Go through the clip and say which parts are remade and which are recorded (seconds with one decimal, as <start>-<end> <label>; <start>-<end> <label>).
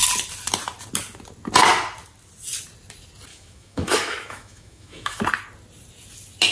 0.0-3.3 recorded; 3.3-5.2 remade; 5.2-6.5 recorded